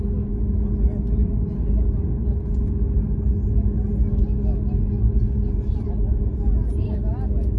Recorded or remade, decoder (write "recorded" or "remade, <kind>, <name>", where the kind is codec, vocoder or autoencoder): recorded